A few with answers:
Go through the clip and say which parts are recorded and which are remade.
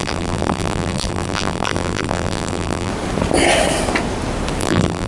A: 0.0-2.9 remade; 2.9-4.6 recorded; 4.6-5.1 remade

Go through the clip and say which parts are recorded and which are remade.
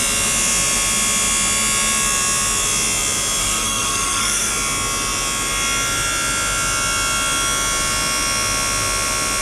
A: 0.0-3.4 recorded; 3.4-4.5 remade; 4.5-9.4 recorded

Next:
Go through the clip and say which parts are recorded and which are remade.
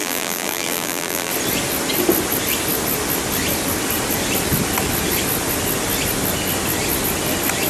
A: 0.0-1.3 remade; 1.3-7.7 recorded